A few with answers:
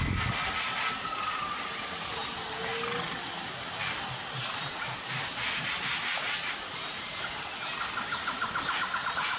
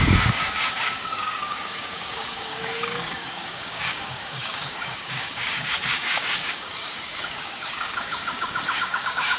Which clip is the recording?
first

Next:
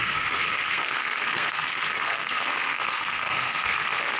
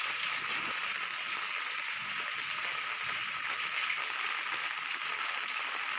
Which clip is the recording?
second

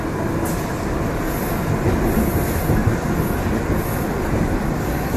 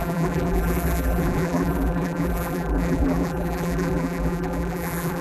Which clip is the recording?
first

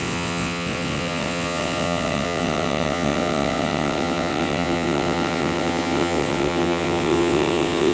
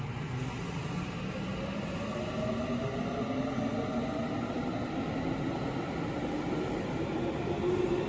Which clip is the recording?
second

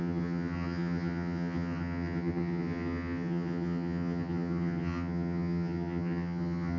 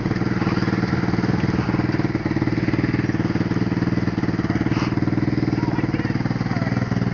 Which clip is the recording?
second